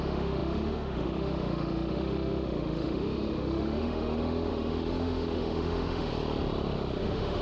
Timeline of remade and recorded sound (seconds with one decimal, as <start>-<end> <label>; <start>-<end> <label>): 0.0-6.1 remade; 6.1-7.0 recorded; 7.0-7.4 remade